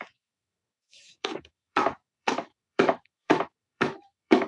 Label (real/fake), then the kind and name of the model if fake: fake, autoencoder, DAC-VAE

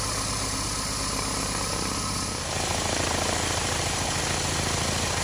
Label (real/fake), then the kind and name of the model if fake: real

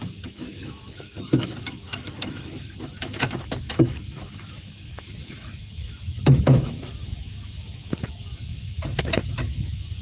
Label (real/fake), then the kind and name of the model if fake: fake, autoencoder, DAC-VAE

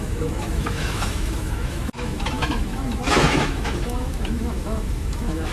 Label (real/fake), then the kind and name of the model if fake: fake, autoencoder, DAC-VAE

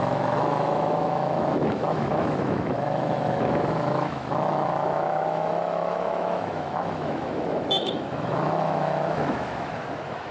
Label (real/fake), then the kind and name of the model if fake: fake, autoencoder, DAC-VAE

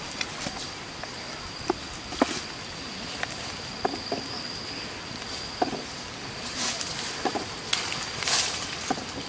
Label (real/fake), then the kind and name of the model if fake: real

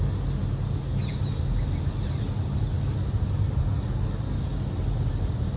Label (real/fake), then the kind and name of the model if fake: real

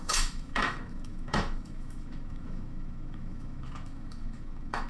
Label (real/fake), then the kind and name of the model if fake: fake, autoencoder, DAC-VAE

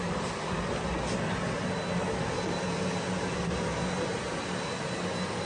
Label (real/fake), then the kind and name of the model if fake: real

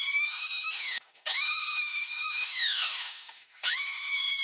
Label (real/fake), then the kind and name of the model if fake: fake, autoencoder, DAC-VAE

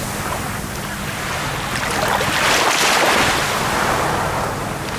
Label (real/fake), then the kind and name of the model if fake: real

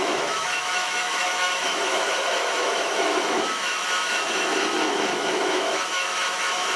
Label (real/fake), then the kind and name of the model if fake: fake, autoencoder, DAC-VAE